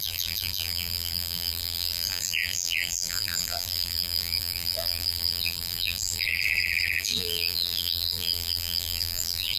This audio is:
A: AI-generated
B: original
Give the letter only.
A